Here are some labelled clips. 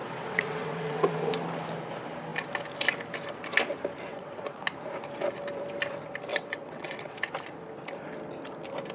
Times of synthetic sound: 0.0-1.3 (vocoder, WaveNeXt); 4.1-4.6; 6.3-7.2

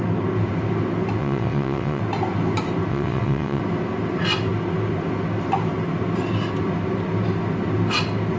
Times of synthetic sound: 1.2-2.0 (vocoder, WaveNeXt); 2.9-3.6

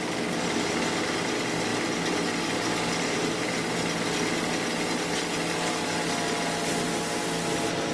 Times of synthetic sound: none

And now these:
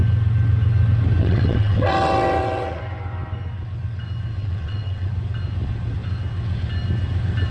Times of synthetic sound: 1.2-2.8 (vocoder, WaveNeXt); 4.4-5.1

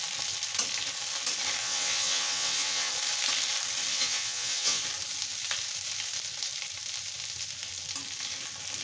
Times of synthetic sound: 1.6-2.9 (vocoder, WaveNeXt); 3.9-4.8